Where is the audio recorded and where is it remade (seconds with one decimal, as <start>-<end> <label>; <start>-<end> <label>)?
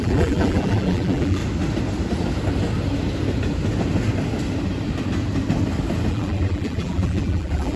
0.0-1.4 remade; 1.4-6.1 recorded; 6.1-7.8 remade